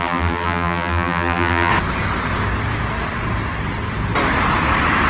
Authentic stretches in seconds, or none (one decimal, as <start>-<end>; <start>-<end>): 1.7-5.1